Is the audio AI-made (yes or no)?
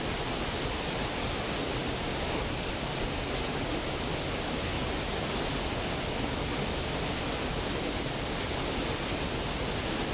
no